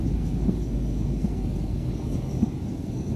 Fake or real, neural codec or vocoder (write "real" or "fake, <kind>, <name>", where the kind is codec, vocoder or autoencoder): fake, codec, SNAC